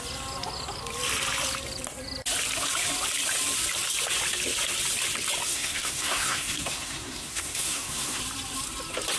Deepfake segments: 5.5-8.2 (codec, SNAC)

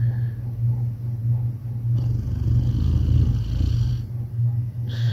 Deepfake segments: 4.3-5.1 (codec, SNAC)

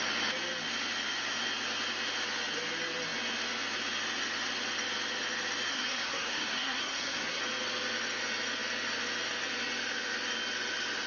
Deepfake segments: 5.7-7.4 (codec, SNAC)

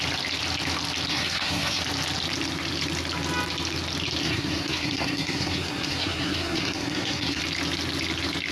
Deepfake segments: 1.1-1.8 (codec, SNAC); 4.2-7.4